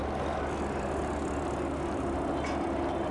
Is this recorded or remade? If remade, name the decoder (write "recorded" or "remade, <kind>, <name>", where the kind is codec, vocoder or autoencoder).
recorded